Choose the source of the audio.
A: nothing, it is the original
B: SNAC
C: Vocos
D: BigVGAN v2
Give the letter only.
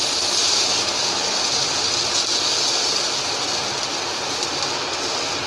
A